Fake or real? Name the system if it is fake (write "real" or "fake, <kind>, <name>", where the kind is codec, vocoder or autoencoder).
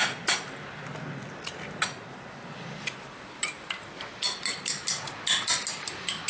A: real